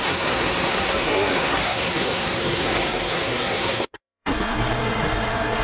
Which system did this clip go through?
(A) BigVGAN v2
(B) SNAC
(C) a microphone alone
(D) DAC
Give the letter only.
B